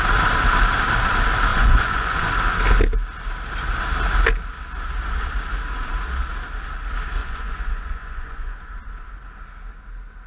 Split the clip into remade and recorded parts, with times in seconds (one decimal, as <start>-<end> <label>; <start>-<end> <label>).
0.0-1.5 recorded; 1.5-2.3 remade; 2.3-7.2 recorded; 7.2-8.6 remade; 8.6-10.3 recorded